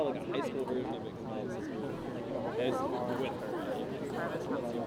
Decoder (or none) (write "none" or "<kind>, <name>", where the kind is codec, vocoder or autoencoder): none